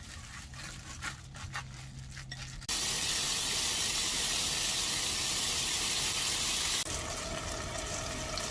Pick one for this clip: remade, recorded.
recorded